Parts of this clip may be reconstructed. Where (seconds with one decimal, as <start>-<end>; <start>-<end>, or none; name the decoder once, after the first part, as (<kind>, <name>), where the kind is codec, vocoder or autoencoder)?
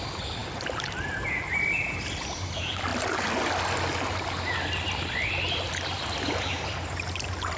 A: none